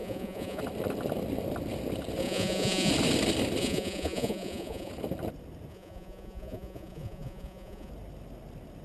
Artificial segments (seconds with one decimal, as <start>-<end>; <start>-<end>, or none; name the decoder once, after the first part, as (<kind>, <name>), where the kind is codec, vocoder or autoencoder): 0.0-0.6 (vocoder, Vocos); 2.2-2.9; 3.6-4.9; 5.7-7.9